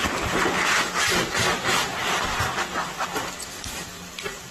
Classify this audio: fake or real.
real